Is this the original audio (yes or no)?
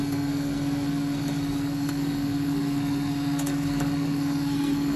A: no